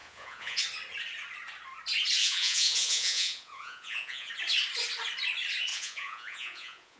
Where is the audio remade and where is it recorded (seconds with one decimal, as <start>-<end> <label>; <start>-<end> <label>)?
0.0-0.6 remade; 0.6-2.2 recorded; 2.2-4.3 remade; 4.3-5.7 recorded; 5.7-7.0 remade